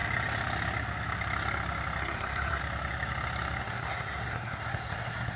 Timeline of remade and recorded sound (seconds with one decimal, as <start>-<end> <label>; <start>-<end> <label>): 0.0-2.0 recorded; 2.0-2.6 remade; 2.6-3.6 recorded; 3.6-5.4 remade